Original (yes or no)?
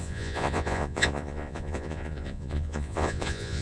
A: no